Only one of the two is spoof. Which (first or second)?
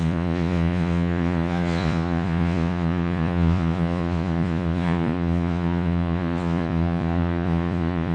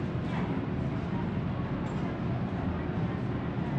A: first